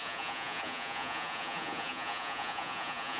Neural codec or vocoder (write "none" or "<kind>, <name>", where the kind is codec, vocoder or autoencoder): vocoder, Vocos